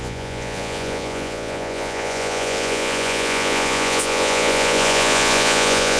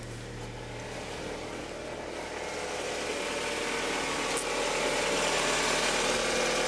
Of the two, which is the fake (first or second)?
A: first